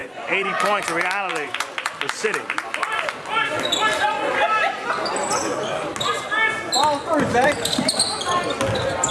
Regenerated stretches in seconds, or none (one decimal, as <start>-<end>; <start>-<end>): 0.0-0.8; 1.3-1.9